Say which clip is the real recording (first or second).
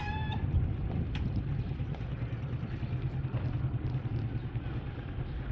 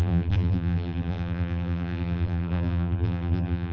first